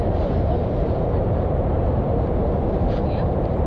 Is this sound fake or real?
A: fake